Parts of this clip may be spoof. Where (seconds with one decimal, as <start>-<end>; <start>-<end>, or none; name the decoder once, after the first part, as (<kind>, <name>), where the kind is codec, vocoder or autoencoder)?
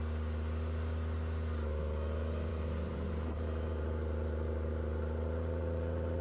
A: 2.5-6.2 (vocoder, BigVGAN v2)